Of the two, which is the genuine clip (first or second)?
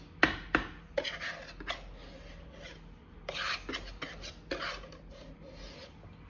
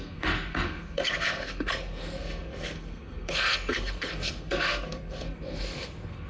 first